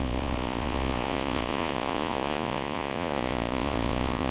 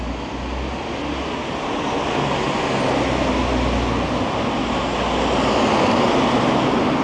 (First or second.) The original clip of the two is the second